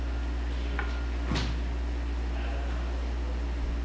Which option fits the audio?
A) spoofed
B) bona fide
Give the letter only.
B